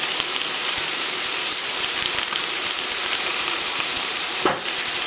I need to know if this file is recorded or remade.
remade